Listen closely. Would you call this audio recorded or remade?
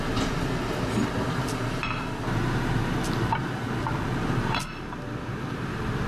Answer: recorded